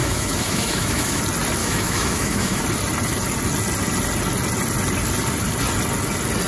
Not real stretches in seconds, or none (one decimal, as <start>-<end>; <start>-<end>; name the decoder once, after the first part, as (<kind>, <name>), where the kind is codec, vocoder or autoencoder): 0.0-1.2 (autoencoder, DAC-VAE); 1.6-2.6